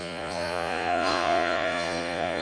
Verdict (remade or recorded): remade